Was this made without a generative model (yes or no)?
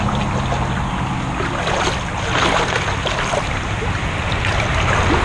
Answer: yes